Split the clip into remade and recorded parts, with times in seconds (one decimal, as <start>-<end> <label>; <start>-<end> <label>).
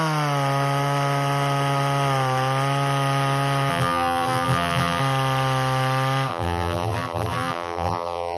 0.0-3.7 recorded; 3.7-5.0 remade; 5.0-6.3 recorded; 6.3-8.4 remade